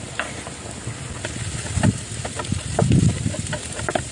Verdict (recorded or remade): recorded